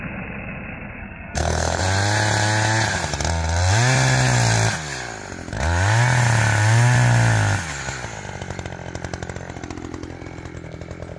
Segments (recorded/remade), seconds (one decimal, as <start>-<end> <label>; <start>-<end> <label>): 0.0-1.0 recorded; 1.0-1.8 remade; 1.8-11.2 recorded